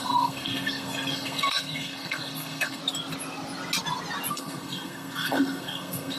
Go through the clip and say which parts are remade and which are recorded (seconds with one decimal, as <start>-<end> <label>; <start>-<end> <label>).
0.0-2.8 remade; 2.8-4.3 recorded; 4.3-6.2 remade

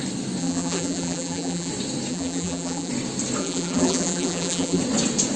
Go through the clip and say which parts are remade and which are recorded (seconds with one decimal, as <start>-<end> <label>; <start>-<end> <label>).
0.0-0.4 recorded; 0.4-1.7 remade; 1.7-2.1 recorded; 2.1-2.9 remade; 2.9-3.4 recorded; 3.4-4.8 remade; 4.8-5.4 recorded

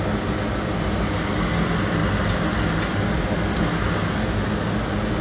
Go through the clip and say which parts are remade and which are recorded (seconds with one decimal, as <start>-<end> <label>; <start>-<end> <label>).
0.0-5.2 recorded

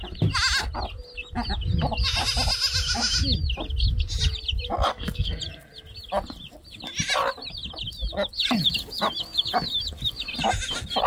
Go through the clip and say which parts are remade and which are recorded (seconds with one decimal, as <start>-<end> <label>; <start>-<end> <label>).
0.0-4.9 recorded; 4.9-5.4 remade; 5.4-11.1 recorded